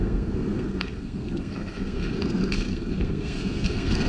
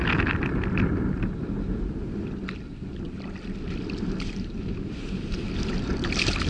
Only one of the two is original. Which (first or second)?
second